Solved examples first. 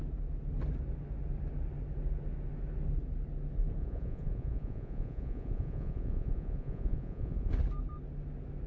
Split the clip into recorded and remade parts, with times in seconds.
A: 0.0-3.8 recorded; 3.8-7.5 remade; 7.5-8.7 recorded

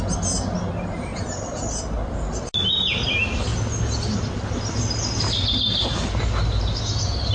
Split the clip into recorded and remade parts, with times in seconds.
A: 0.0-1.1 recorded; 1.1-2.3 remade; 2.3-7.3 recorded

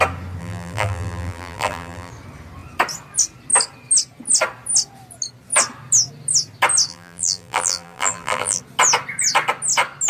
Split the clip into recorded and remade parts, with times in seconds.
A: 0.0-0.4 recorded; 0.4-2.1 remade; 2.1-6.9 recorded; 6.9-8.6 remade; 8.6-10.1 recorded

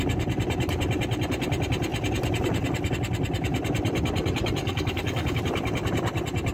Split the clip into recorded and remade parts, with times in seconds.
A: 0.0-4.6 recorded; 4.6-5.4 remade; 5.4-6.5 recorded

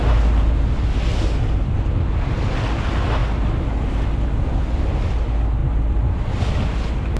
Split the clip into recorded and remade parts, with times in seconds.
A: 0.0-1.1 recorded; 1.1-1.6 remade; 1.6-5.6 recorded; 5.6-6.4 remade; 6.4-7.2 recorded

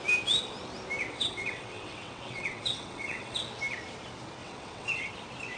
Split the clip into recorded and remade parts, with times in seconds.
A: 0.0-1.1 recorded; 1.1-3.4 remade; 3.4-4.4 recorded; 4.4-5.1 remade; 5.1-5.6 recorded

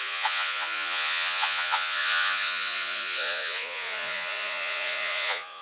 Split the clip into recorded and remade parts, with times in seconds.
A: 0.0-5.6 remade